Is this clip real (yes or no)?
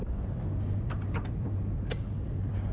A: yes